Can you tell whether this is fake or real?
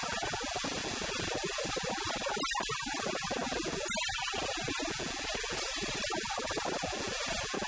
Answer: real